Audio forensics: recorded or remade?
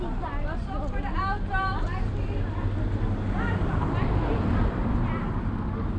recorded